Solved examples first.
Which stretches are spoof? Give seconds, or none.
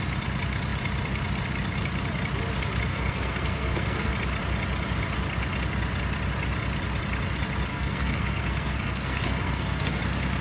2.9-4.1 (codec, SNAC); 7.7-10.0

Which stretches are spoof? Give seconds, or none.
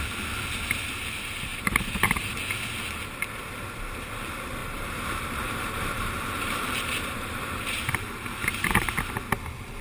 1.5-2.4 (vocoder, BigVGAN v2); 4.6-8.9